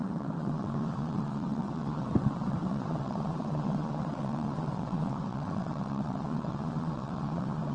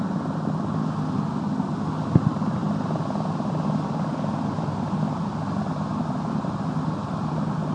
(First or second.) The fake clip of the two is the first